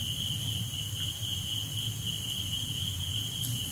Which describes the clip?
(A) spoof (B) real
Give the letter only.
B